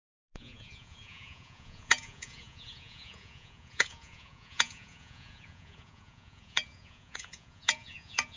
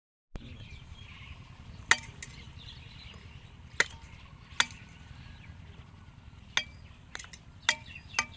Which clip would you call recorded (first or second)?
second